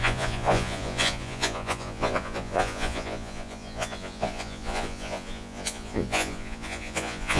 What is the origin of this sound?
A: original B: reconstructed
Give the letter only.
B